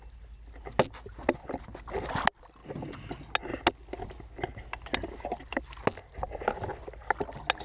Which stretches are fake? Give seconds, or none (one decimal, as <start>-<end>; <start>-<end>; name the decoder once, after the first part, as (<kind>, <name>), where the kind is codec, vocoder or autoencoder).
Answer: none